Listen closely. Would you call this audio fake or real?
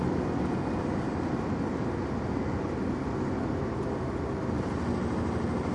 real